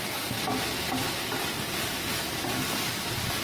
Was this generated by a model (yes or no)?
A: no